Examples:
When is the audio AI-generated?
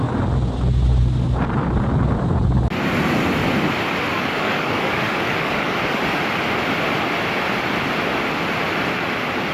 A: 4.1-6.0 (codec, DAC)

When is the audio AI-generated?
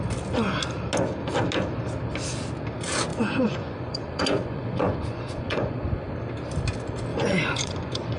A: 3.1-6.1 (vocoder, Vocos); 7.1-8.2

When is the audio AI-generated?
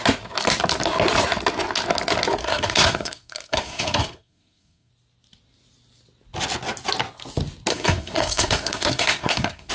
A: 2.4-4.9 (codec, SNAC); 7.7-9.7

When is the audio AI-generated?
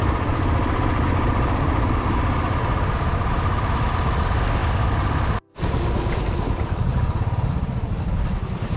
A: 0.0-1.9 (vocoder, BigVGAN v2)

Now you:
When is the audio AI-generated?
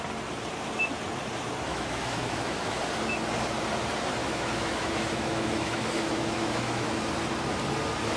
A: 1.7-2.8 (autoencoder, DAC-VAE); 4.2-6.9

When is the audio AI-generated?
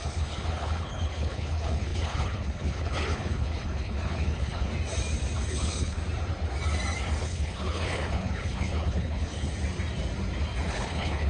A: 0.0-4.7 (codec, HILCodec); 5.5-6.0; 7.2-9.5; 10.7-11.3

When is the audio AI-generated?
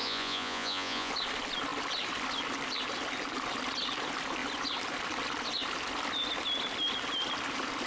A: 0.0-1.1 (vocoder, Vocos)